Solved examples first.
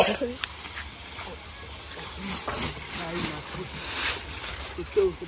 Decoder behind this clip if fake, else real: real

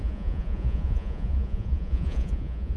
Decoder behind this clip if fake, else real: fake, vocoder, Vocos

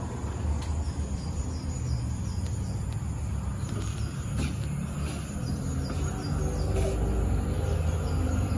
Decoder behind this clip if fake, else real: real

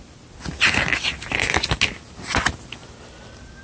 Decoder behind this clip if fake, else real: real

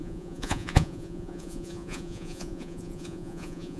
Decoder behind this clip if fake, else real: fake, vocoder, Vocos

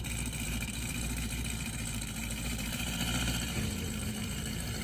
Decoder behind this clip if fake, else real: fake, vocoder, BigVGAN v2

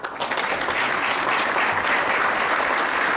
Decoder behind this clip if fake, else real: real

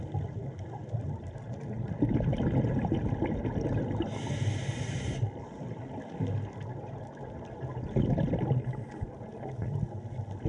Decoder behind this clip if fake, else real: real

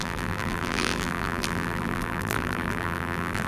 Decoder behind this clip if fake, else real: fake, vocoder, BigVGAN v2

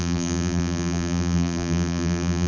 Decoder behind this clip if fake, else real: fake, vocoder, BigVGAN v2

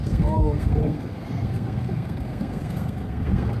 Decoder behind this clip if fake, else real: fake, codec, SNAC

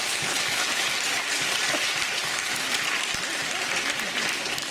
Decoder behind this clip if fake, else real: real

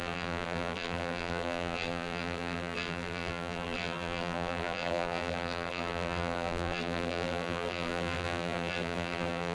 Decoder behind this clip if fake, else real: fake, vocoder, BigVGAN v2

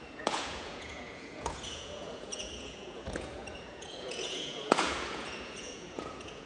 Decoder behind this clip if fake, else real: fake, vocoder, Vocos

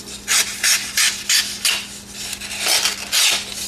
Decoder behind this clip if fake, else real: fake, vocoder, BigVGAN v2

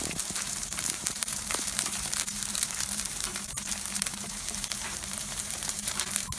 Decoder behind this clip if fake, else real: fake, vocoder, BigVGAN v2